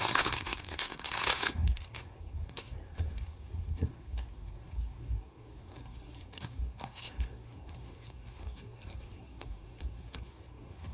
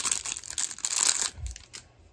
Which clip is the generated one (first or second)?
first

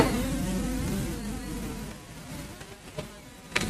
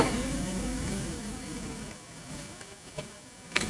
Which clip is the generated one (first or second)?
second